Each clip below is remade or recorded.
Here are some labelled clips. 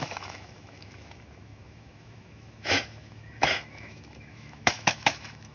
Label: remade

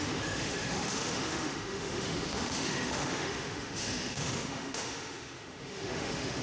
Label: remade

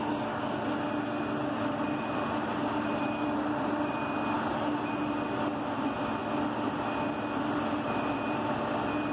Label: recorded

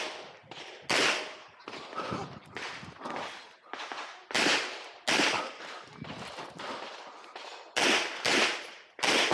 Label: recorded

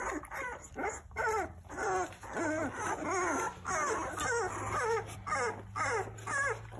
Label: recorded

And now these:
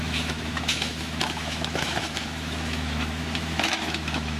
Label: remade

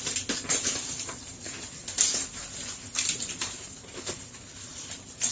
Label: recorded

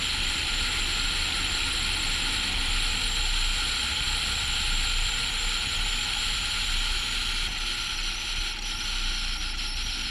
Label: recorded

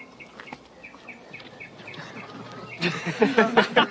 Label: recorded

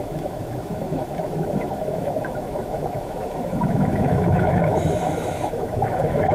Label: remade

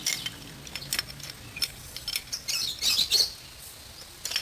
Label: recorded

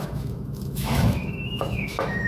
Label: remade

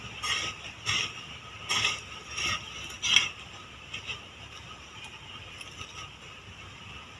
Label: recorded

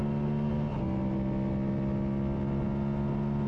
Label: recorded